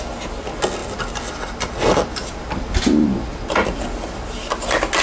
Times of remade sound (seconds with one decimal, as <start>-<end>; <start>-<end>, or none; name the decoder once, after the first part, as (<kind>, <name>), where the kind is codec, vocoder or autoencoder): none